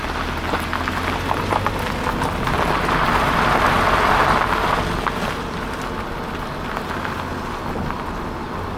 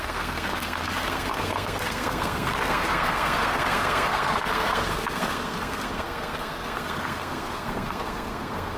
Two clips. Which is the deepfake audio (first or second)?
second